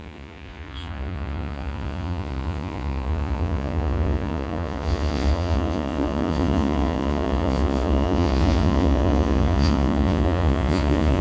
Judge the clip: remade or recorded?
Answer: remade